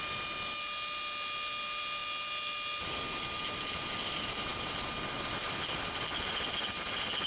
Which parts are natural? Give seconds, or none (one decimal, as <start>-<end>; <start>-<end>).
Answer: 0.0-7.3